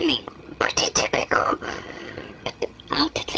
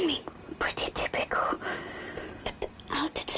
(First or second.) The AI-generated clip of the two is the first